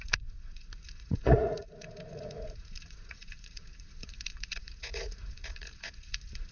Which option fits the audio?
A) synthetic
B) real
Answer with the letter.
A